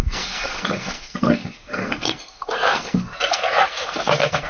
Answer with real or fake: fake